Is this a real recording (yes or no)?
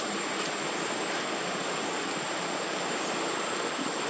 yes